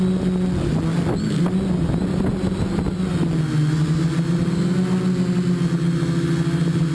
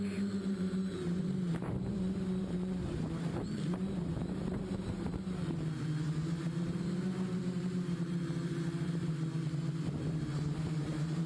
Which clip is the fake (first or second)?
second